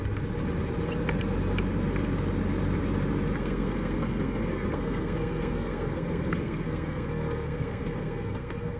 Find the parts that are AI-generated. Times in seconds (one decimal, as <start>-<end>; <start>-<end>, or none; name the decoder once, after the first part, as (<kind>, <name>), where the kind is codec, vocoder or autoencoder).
3.4-8.8 (codec, SNAC)